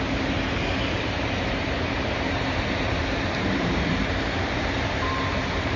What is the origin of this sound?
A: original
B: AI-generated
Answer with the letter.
B